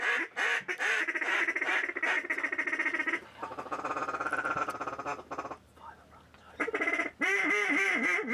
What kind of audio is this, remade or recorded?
recorded